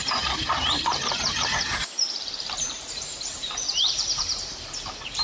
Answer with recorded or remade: remade